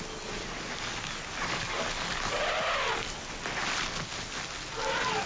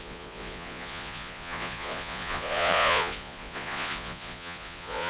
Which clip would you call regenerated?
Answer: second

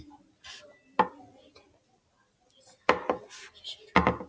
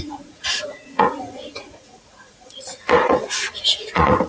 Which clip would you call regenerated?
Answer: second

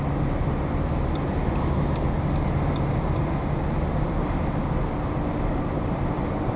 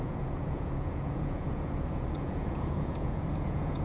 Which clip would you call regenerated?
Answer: second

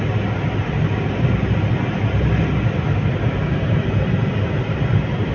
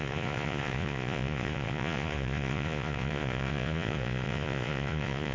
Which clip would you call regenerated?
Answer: second